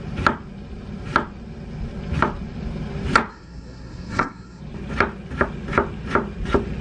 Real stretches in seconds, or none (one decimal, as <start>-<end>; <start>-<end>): 0.0-3.3; 4.6-6.8